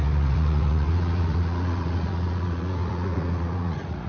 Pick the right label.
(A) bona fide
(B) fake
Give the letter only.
B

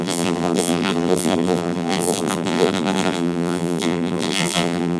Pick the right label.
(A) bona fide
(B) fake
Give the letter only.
B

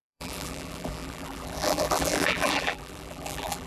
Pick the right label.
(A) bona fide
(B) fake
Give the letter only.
B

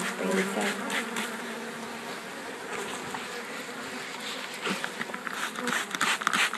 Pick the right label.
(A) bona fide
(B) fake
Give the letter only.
A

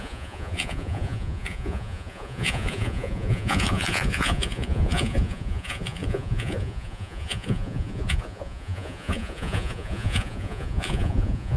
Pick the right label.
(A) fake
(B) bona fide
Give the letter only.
A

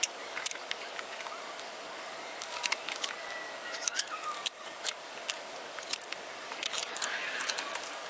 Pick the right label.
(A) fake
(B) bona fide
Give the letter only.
A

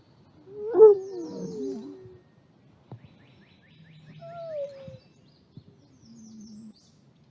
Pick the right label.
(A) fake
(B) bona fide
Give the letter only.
B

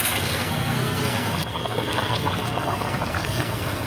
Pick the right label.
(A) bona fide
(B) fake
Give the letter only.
B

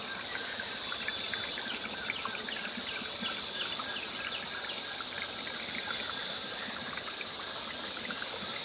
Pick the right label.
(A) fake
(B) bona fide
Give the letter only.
B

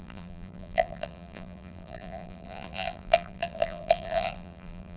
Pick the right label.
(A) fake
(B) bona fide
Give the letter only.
A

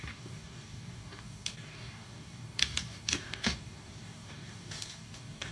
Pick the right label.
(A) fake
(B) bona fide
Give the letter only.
A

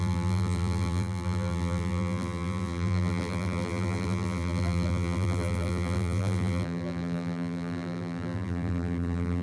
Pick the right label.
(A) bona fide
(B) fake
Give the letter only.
B